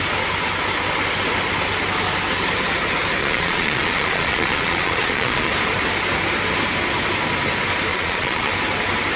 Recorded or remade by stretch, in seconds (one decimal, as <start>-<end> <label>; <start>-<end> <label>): 0.0-3.2 recorded; 3.2-5.5 remade; 5.5-7.9 recorded; 7.9-8.5 remade; 8.5-9.2 recorded